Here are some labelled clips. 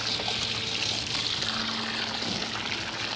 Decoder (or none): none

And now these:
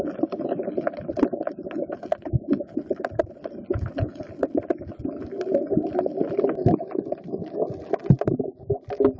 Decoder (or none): none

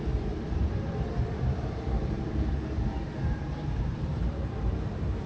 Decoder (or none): vocoder, BigVGAN v2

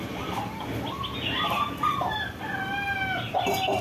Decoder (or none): none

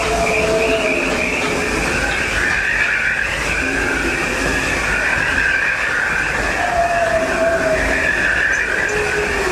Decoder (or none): none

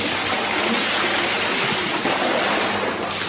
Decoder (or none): none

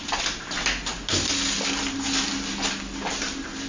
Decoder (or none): none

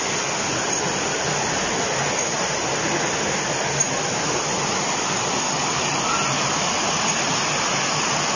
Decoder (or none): none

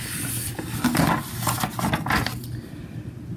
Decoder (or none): none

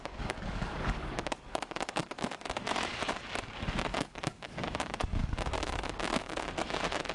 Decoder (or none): codec, DAC